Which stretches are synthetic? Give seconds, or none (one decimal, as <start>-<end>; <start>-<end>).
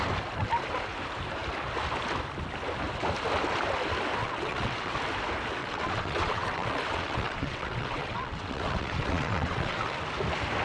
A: 4.2-4.9; 5.6-10.0